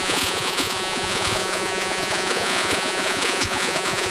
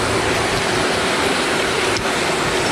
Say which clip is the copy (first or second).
first